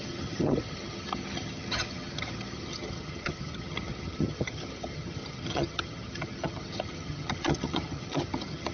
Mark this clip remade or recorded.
remade